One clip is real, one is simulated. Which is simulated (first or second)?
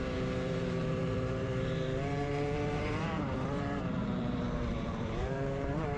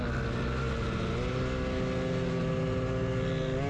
first